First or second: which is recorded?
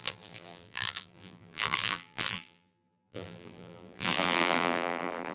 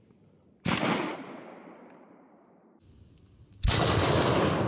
second